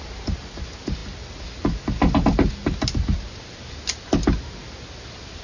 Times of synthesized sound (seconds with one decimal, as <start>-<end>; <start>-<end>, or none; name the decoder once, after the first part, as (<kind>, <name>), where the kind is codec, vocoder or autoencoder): none